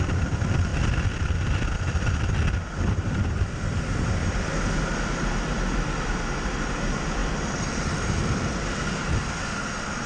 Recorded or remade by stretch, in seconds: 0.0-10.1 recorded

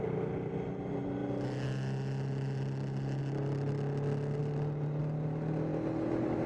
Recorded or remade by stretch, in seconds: 0.0-4.4 recorded; 4.4-5.0 remade; 5.0-5.7 recorded; 5.7-6.5 remade